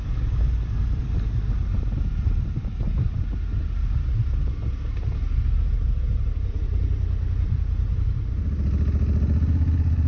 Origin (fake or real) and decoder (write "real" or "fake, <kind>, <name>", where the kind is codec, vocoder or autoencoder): real